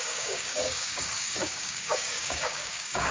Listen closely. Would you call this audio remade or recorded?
remade